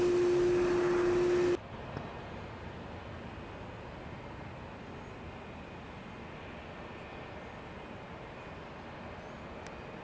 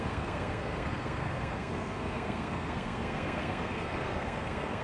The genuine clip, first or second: first